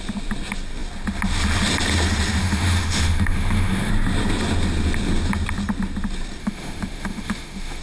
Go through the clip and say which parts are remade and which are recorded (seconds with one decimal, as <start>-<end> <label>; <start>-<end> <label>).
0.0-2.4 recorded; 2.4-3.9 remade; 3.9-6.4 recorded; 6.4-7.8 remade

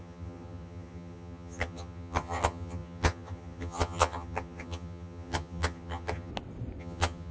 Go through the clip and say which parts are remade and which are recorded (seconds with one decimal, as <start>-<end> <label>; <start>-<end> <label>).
0.0-6.3 remade; 6.3-6.8 recorded; 6.8-7.3 remade

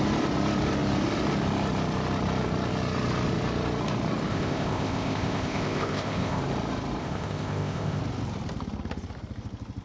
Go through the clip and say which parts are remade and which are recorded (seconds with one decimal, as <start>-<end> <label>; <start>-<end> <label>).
0.0-4.3 recorded; 4.3-6.4 remade; 6.4-7.0 recorded; 7.0-8.0 remade; 8.0-9.8 recorded

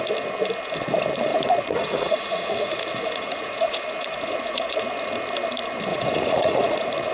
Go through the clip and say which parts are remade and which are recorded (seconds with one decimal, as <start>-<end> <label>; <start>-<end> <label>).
0.0-1.3 recorded; 1.3-4.8 remade; 4.8-5.9 recorded; 5.9-7.1 remade